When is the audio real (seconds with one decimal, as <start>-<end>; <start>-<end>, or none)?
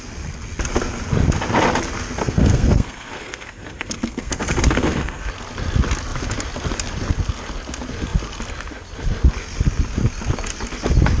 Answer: 0.0-2.2; 5.3-11.2